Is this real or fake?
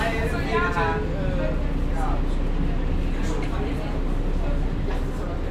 real